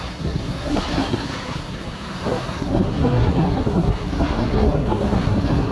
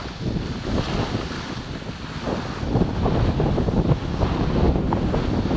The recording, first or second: second